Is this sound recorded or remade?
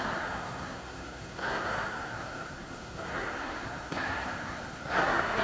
remade